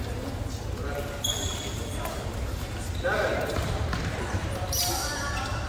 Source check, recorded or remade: remade